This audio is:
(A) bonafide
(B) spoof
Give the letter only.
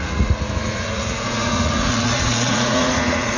B